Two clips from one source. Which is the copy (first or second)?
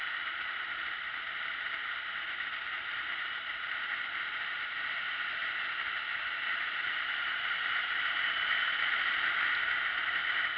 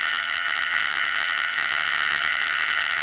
second